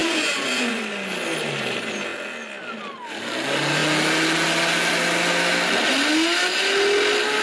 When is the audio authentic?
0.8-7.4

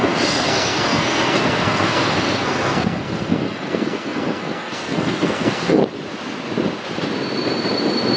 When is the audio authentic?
5.8-8.2

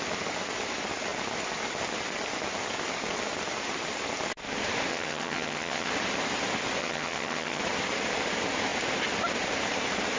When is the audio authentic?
0.0-4.9; 5.9-6.8; 7.6-10.2

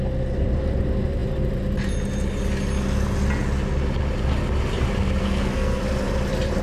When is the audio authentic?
0.0-5.2; 5.8-6.6

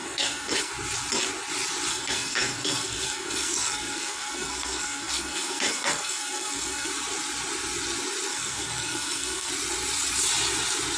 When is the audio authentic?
0.7-1.9; 6.9-8.3; 9.5-11.0

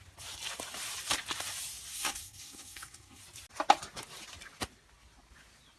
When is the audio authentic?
0.0-1.9; 3.2-5.8

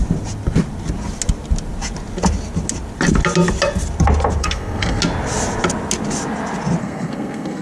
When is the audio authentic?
0.0-4.4; 5.0-6.8